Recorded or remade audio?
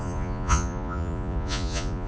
remade